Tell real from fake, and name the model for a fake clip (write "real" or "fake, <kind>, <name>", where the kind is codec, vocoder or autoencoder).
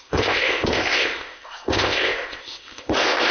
fake, codec, ZipCodec